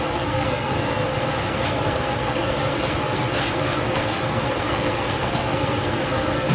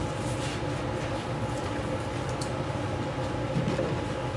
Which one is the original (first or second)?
second